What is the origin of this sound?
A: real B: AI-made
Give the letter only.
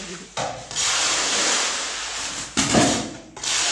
B